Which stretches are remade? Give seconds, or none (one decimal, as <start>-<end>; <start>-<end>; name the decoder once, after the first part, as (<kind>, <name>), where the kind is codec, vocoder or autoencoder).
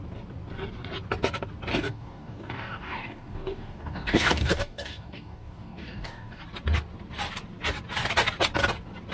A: 1.7-6.4 (codec, DAC)